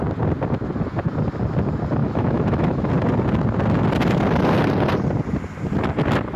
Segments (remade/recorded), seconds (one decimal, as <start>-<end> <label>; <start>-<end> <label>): 0.0-2.0 recorded; 2.0-2.9 remade; 2.9-6.4 recorded